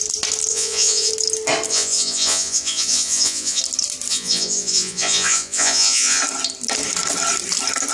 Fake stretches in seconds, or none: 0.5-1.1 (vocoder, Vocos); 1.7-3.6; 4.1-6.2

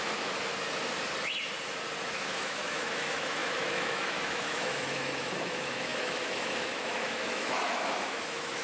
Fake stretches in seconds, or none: 0.0-0.5 (autoencoder, DAC-VAE); 2.1-8.6

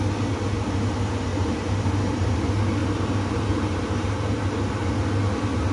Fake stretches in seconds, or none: 1.3-2.3 (vocoder, BigVGAN v2); 2.8-4.4

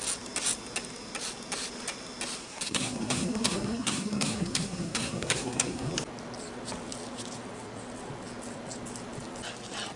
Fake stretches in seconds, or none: 2.4-5.9 (codec, SNAC)

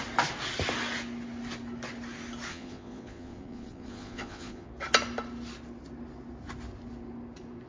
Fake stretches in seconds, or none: 2.5-4.7 (vocoder, Vocos)